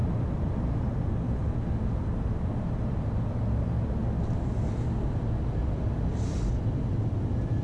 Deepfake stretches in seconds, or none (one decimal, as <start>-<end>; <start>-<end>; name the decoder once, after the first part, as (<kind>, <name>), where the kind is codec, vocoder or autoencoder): none